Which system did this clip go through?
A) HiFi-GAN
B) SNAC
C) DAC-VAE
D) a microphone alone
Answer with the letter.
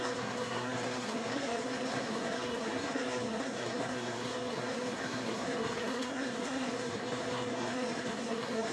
B